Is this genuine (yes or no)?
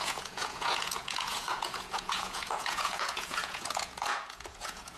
no